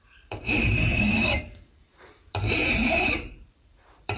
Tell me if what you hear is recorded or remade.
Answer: remade